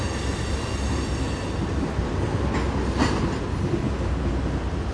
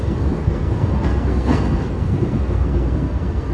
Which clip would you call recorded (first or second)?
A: first